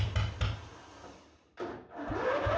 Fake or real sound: fake